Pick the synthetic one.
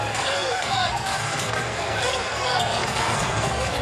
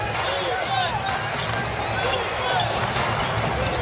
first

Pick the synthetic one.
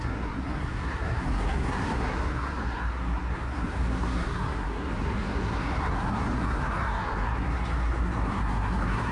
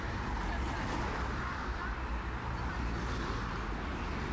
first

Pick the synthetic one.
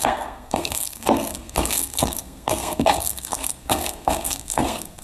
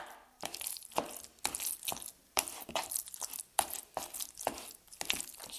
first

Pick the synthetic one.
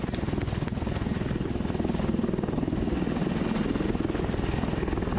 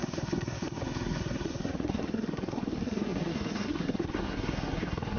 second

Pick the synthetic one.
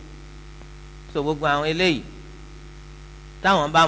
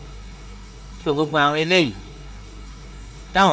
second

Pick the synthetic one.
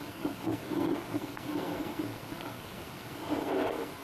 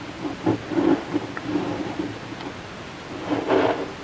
first